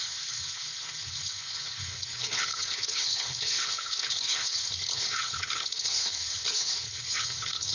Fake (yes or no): yes